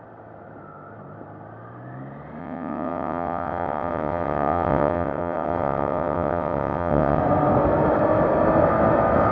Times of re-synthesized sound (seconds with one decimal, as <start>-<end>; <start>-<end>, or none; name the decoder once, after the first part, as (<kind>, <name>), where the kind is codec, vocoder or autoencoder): 2.4-7.2 (vocoder, WaveNeXt)